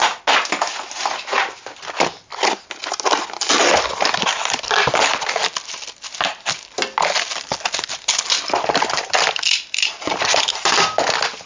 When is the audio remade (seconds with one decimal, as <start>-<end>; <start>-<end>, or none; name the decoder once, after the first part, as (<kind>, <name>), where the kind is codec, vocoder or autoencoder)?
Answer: none